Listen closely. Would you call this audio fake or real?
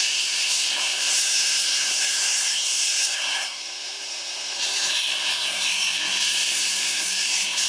fake